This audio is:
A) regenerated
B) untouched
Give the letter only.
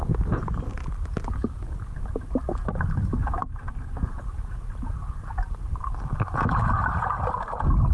B